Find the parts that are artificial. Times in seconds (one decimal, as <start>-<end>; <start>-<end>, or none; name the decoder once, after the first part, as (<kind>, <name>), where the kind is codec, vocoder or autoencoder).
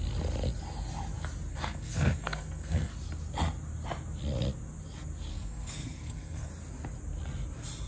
1.5-2.9 (codec, SNAC); 5.3-6.5